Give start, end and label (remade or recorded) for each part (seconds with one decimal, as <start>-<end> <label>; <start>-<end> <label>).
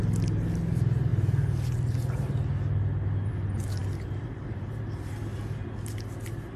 0.0-6.6 recorded